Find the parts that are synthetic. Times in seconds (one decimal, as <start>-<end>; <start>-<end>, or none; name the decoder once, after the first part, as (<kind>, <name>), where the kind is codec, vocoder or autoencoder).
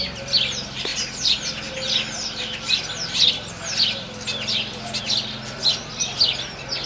none